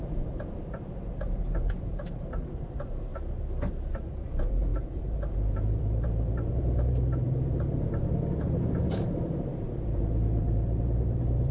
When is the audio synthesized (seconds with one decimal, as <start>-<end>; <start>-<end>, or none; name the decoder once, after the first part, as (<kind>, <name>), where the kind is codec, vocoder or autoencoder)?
0.0-3.1 (vocoder, BigVGAN v2); 3.9-9.5; 10.0-11.5